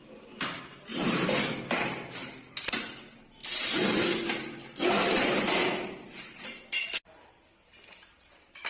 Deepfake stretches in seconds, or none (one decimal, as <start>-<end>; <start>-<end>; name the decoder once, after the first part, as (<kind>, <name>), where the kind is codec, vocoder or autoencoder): 0.9-1.5 (vocoder, BigVGAN v2)